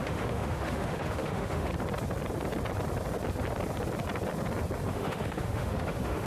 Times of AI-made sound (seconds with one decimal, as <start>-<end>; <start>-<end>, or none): 0.0-1.7; 4.9-6.3